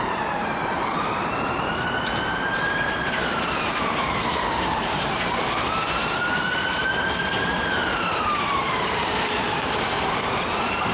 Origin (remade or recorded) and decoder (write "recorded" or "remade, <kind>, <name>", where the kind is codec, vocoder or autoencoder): remade, vocoder, BigVGAN v2